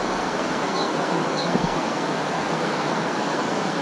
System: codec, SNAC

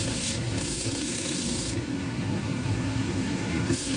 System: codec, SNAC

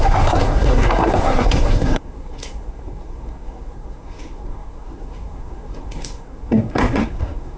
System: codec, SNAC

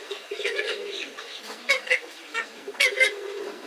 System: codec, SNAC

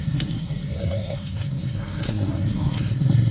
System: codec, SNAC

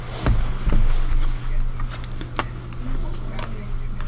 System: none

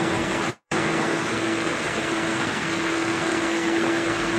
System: codec, SNAC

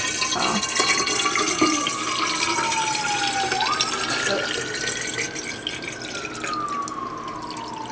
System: none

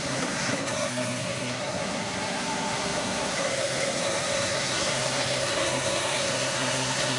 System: codec, SNAC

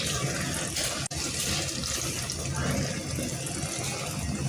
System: none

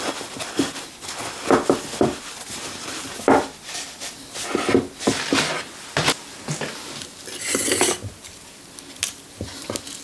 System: none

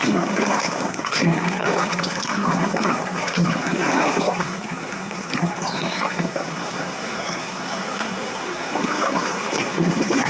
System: codec, SNAC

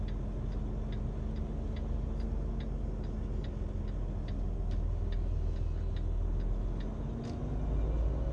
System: none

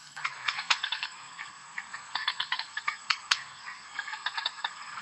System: codec, SNAC